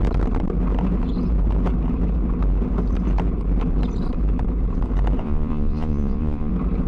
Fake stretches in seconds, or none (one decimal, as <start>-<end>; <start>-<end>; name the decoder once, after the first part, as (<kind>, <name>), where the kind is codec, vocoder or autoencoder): 5.2-6.5 (vocoder, Vocos)